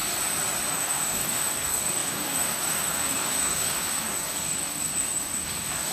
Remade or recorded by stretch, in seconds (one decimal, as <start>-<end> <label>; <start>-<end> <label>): 0.0-0.7 recorded; 0.7-5.9 remade